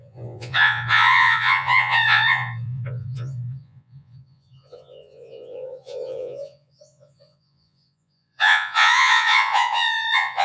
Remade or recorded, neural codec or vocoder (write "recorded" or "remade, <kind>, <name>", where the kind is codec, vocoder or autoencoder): remade, vocoder, Vocos